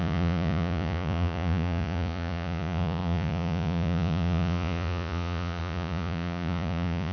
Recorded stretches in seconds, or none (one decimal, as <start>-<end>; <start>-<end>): none